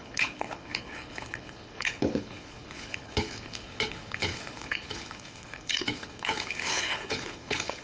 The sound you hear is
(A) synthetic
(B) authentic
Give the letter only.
A